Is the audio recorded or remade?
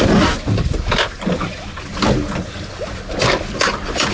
recorded